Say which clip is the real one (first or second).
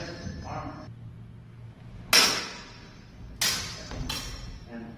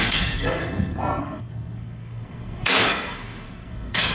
first